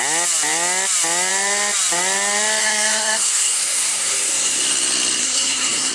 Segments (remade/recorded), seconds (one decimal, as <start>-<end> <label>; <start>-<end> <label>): 0.0-2.6 recorded; 2.6-4.6 remade; 4.6-5.2 recorded; 5.2-5.9 remade